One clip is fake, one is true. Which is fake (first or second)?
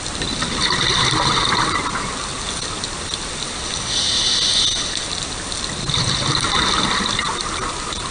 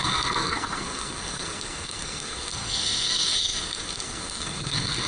second